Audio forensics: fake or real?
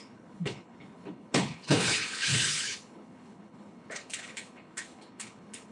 fake